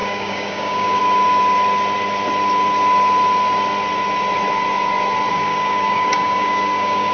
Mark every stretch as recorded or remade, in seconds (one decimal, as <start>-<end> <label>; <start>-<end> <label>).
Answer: 0.0-1.0 remade; 1.0-5.3 recorded; 5.3-7.1 remade